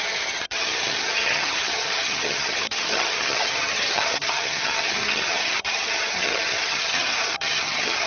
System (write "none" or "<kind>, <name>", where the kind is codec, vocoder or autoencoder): vocoder, HiFi-GAN